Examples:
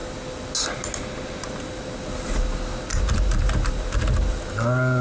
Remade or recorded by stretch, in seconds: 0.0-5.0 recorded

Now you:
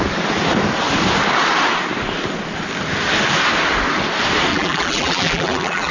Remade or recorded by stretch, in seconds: 0.0-4.5 recorded; 4.5-5.9 remade